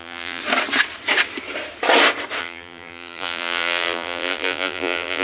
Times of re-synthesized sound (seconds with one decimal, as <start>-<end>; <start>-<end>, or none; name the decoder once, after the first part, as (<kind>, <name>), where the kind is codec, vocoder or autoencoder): 0.0-0.4 (vocoder, BigVGAN v2); 2.4-5.2